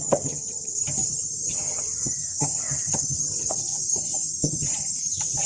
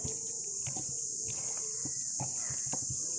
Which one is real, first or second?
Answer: second